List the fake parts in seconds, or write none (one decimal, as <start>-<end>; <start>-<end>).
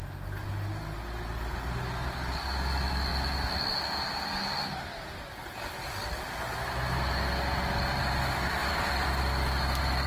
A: 8.6-9.1